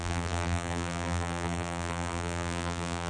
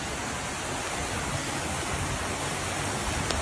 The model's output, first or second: first